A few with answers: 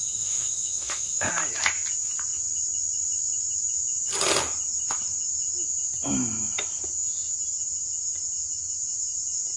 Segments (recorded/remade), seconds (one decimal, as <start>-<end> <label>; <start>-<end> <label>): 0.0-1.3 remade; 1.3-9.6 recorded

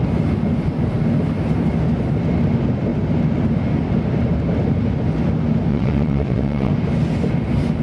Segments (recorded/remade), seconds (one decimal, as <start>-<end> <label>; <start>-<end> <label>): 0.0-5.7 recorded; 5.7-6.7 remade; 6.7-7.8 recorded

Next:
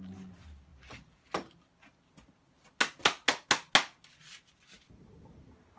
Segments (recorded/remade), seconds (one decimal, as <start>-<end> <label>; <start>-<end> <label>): 0.0-5.8 recorded